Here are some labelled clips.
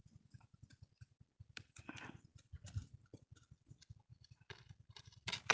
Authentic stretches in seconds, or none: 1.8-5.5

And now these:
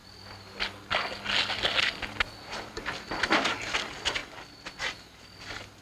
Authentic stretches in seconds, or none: 0.0-5.8

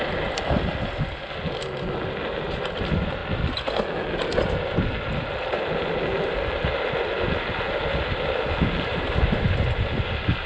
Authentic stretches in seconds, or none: 0.0-8.9; 9.6-10.5